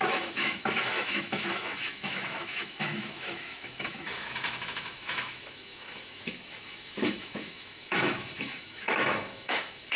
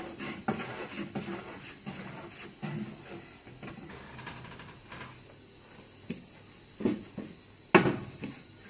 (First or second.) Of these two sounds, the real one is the second